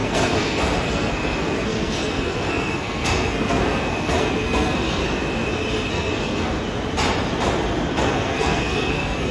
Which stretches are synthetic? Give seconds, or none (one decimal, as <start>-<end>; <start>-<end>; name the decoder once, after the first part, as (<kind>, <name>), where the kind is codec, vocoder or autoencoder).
0.0-5.0 (codec, SNAC); 5.9-6.6; 7.9-9.3